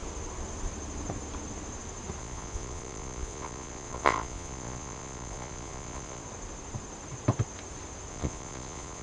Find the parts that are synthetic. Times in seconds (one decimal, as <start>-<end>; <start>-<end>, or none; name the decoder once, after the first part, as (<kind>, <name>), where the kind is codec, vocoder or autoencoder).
2.2-6.2 (vocoder, Vocos); 8.1-9.0